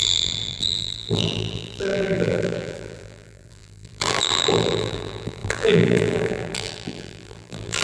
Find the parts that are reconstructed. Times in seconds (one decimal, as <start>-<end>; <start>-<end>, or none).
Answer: 0.0-7.8